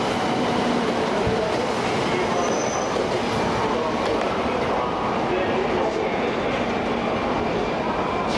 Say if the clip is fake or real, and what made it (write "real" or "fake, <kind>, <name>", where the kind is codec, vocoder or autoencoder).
real